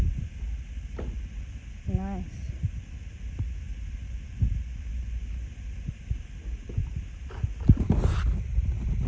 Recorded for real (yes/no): yes